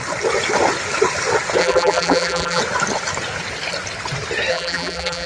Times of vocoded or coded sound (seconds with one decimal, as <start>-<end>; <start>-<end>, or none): 1.6-2.6; 4.5-5.3